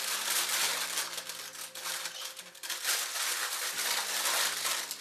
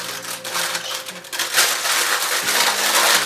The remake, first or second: first